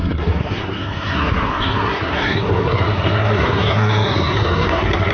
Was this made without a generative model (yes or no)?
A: no